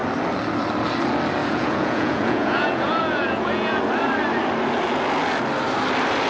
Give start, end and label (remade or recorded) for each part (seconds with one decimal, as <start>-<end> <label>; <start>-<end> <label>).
0.0-1.4 recorded; 1.4-3.8 remade; 3.8-6.3 recorded